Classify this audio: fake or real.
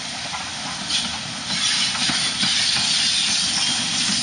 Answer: real